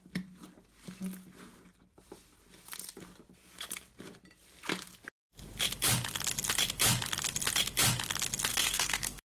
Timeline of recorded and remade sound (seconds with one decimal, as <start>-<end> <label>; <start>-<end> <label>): 0.0-8.5 recorded; 8.5-9.3 remade